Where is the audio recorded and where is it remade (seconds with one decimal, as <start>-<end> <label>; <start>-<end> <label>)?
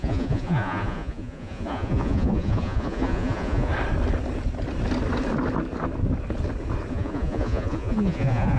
0.0-3.7 remade; 3.7-6.9 recorded; 6.9-8.6 remade